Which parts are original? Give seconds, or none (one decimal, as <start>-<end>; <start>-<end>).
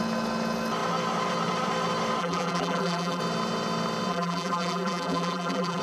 0.0-2.2; 3.2-4.1